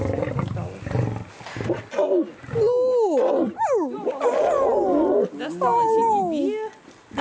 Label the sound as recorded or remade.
recorded